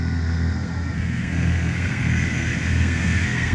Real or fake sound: fake